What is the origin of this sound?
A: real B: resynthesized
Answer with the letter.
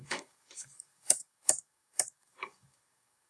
B